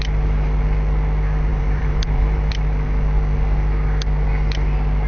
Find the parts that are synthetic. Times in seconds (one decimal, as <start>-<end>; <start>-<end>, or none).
1.5-2.5